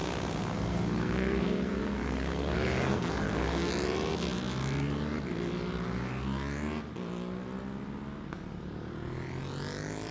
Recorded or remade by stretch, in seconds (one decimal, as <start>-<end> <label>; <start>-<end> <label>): 0.0-3.7 remade; 3.7-10.1 recorded